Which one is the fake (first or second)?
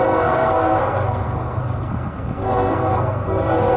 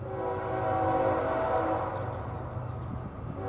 first